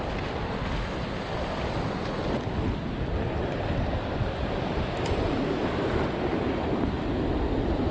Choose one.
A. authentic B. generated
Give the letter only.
A